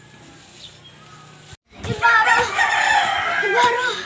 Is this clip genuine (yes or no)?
yes